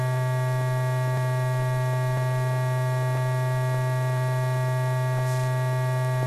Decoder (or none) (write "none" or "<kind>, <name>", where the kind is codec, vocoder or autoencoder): none